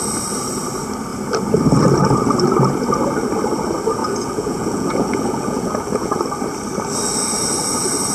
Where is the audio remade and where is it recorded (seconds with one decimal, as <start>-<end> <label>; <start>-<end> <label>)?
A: 0.0-4.0 recorded; 4.0-6.2 remade; 6.2-8.1 recorded